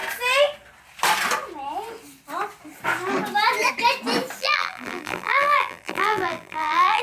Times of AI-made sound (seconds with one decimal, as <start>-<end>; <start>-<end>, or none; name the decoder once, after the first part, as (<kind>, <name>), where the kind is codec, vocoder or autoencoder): 4.4-7.0 (vocoder, BigVGAN v2)